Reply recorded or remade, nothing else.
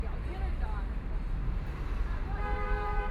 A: remade